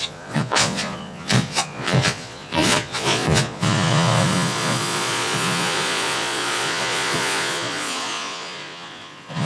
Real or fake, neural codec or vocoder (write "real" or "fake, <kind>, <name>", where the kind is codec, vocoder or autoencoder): fake, vocoder, Vocos